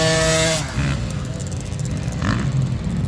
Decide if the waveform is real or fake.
real